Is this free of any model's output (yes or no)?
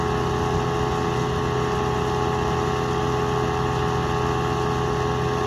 yes